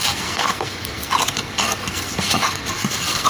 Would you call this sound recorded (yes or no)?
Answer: no